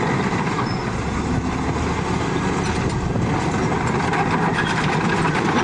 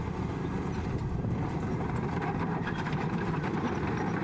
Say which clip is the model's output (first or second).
second